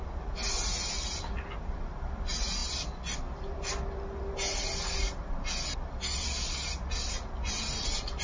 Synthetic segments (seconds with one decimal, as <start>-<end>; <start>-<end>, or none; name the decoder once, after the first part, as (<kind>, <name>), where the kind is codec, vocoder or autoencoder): none